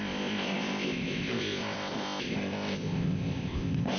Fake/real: fake